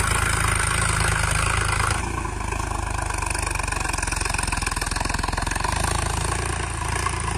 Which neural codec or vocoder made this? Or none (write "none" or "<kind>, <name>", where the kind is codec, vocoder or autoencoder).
none